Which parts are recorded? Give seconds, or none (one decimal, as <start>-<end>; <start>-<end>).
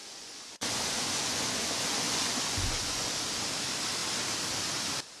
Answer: 3.1-5.2